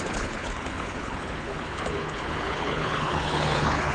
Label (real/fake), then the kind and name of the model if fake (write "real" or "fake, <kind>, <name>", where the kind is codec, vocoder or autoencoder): fake, codec, HILCodec